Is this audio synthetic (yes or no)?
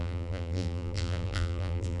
yes